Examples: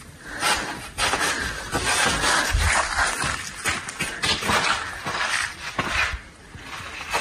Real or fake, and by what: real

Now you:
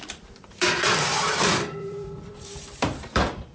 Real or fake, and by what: fake, vocoder, BigVGAN v2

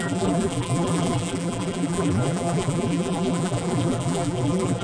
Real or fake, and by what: fake, vocoder, BigVGAN v2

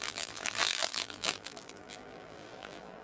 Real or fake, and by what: fake, vocoder, BigVGAN v2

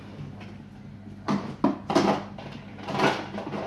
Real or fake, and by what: real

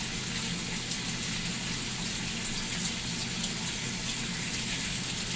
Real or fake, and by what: real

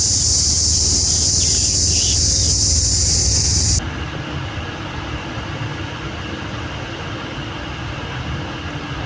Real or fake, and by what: real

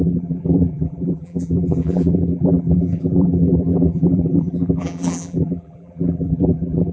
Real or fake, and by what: fake, vocoder, BigVGAN v2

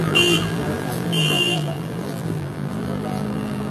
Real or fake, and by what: fake, vocoder, BigVGAN v2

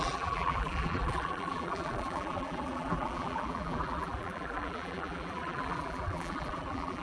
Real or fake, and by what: fake, vocoder, BigVGAN v2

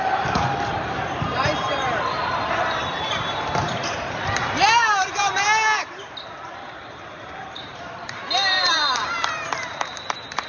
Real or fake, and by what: fake, vocoder, BigVGAN v2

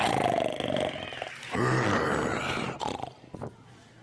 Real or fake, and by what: real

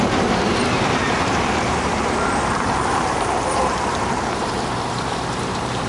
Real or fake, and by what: fake, vocoder, BigVGAN v2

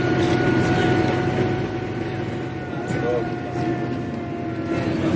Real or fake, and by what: real